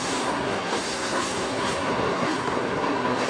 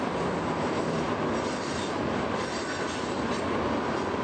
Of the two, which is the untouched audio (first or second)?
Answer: second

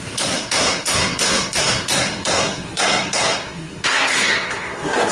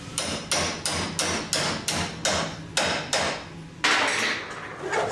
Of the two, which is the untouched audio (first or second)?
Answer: second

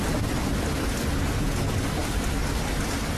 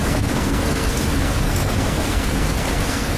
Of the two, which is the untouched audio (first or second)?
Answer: first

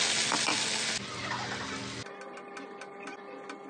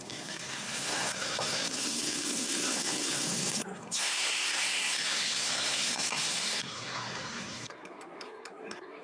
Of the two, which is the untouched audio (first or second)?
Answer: first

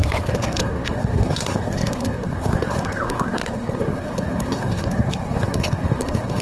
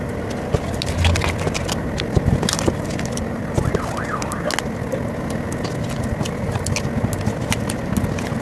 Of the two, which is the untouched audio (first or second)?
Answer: second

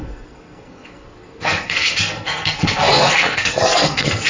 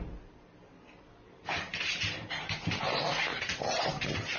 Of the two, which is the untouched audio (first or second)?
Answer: second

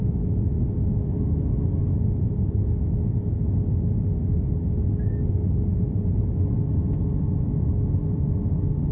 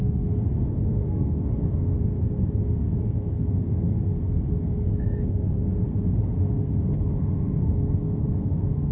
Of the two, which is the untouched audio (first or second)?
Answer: first